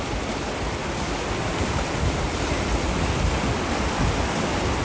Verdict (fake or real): real